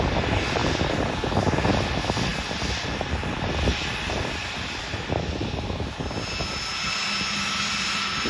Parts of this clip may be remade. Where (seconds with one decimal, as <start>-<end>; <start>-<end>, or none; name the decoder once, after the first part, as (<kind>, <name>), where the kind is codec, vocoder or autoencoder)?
none